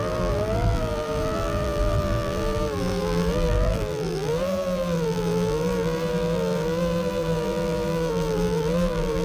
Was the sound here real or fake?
fake